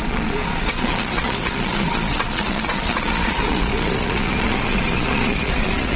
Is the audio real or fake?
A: fake